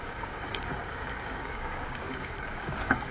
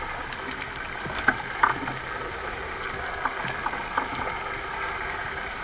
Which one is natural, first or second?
second